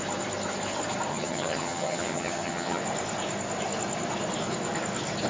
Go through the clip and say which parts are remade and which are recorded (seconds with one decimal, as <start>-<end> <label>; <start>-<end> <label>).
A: 0.0-1.1 recorded; 1.1-2.8 remade; 2.8-5.3 recorded